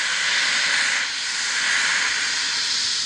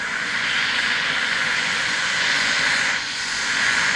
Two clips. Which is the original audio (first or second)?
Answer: first